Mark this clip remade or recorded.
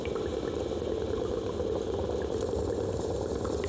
remade